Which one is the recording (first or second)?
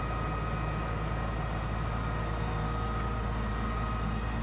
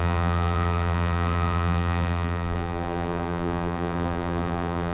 first